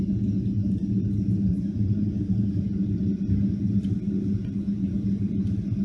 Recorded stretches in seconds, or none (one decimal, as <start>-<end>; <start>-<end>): 0.0-1.5; 2.1-4.4; 4.9-5.8